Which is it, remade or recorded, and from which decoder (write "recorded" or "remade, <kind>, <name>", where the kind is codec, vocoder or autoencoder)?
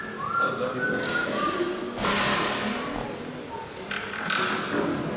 recorded